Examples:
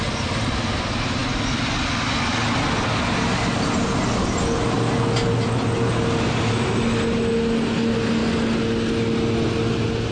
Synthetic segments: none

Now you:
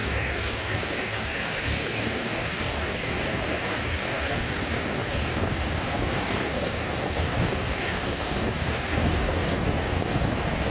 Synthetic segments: 0.0-10.7 (codec, DAC)

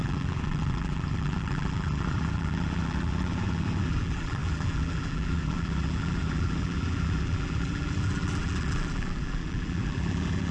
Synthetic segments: 0.0-10.5 (vocoder, BigVGAN v2)